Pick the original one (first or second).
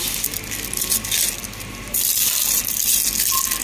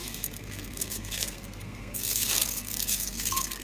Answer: first